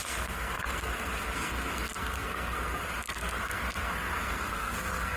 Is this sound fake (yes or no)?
yes